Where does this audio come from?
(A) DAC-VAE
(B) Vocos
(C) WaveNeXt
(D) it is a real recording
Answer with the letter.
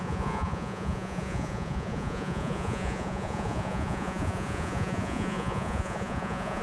B